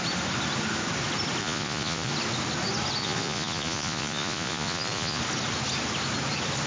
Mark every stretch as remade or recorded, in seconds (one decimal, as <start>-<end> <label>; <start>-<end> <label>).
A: 0.0-1.4 recorded; 1.4-2.1 remade; 2.1-3.0 recorded; 3.0-5.2 remade; 5.2-6.7 recorded